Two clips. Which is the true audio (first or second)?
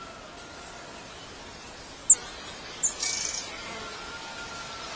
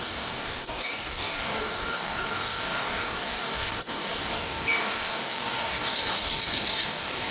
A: first